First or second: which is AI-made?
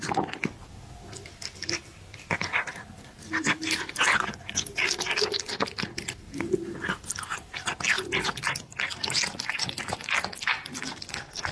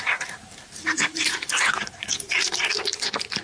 second